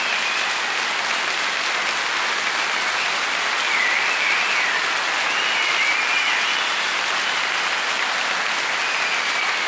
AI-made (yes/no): no